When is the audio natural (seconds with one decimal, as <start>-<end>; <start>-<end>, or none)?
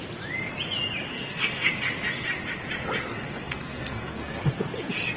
0.0-1.1; 1.7-3.1; 4.4-5.2